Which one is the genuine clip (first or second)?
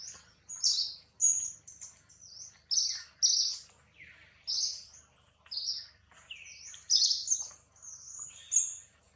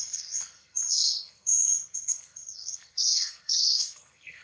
first